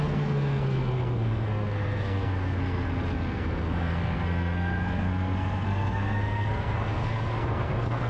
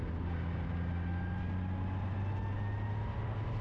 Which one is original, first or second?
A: second